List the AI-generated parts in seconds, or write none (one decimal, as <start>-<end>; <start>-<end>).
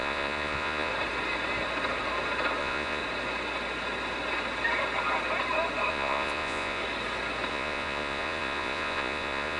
0.0-0.9; 2.6-3.0; 5.9-6.8; 7.5-9.6